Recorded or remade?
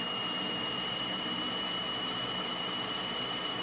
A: recorded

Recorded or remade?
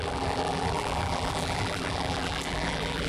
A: remade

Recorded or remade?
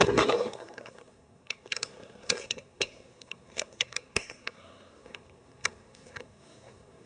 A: remade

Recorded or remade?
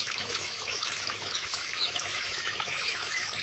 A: remade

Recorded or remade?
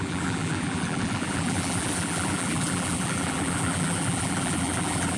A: remade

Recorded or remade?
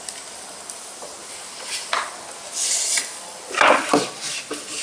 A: recorded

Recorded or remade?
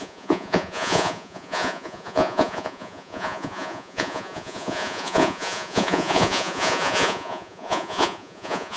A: remade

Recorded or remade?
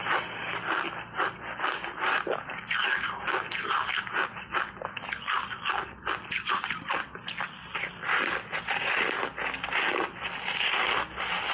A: recorded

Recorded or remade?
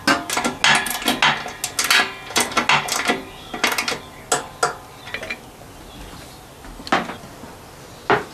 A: recorded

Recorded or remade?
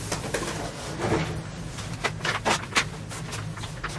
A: recorded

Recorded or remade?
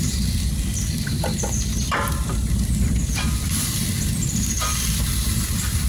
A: remade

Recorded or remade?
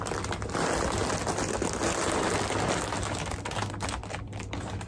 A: recorded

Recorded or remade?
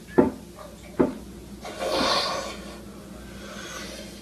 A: recorded